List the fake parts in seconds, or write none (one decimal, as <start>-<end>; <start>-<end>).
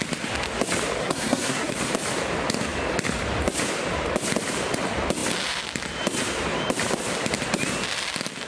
1.0-1.7